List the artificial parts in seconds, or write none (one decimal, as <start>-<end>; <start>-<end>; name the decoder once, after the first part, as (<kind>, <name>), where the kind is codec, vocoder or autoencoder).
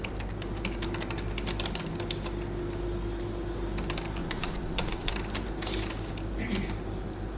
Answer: 4.2-5.1 (vocoder, Vocos)